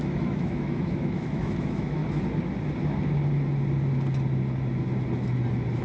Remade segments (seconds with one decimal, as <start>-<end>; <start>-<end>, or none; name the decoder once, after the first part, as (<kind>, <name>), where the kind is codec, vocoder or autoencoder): 0.0-2.0 (autoencoder, DAC-VAE)